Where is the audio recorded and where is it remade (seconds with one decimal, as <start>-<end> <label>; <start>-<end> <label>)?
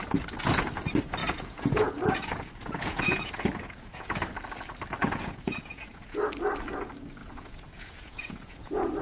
0.0-1.2 recorded; 1.2-4.1 remade; 4.1-5.0 recorded; 5.0-6.3 remade; 6.3-7.2 recorded; 7.2-9.0 remade